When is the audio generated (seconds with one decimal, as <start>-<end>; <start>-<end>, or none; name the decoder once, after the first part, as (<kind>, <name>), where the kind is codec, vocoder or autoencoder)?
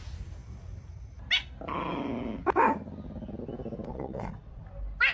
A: 3.9-4.6 (vocoder, Vocos)